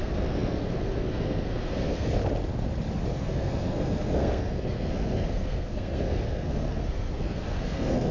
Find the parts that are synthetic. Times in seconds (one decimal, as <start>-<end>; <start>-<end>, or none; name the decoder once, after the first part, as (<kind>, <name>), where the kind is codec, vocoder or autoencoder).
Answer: 0.0-2.2 (codec, SNAC); 3.1-8.1